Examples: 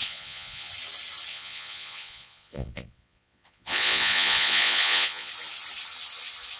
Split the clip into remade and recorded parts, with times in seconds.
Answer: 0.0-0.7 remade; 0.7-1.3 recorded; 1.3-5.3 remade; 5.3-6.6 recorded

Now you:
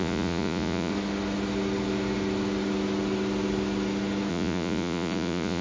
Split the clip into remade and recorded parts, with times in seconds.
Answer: 0.0-0.9 remade; 0.9-4.3 recorded; 4.3-5.6 remade